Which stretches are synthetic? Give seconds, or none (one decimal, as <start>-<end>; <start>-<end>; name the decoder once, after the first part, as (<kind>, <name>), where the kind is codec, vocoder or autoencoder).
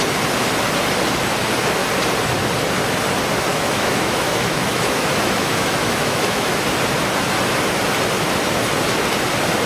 3.5-6.5 (autoencoder, DAC-VAE)